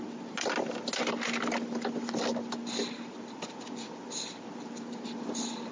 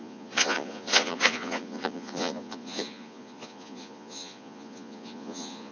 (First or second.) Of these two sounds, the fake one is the second